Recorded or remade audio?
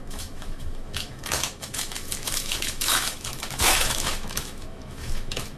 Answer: remade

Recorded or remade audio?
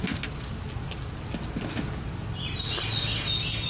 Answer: recorded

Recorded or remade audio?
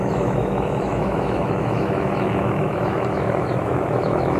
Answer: remade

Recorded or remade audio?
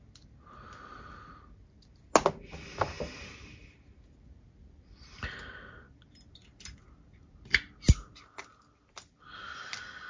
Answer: recorded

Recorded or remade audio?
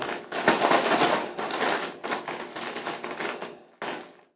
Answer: recorded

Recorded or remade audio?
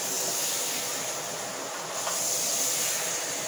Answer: recorded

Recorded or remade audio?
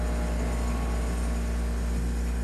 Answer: recorded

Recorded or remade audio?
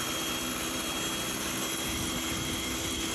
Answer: recorded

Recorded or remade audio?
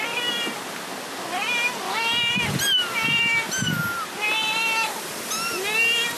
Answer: recorded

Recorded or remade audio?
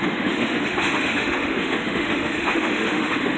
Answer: remade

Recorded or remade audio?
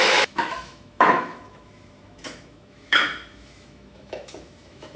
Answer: remade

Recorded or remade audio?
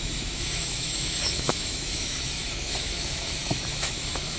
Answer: remade